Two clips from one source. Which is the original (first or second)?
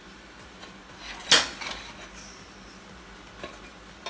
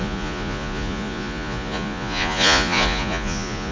first